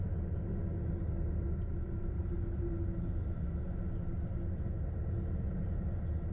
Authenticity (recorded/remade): recorded